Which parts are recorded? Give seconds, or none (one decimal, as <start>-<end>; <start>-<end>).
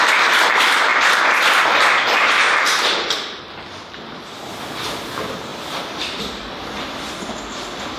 0.0-5.5; 7.2-8.0